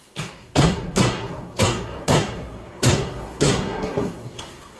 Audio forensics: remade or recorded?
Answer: remade